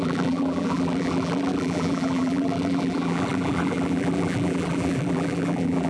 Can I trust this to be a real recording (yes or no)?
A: no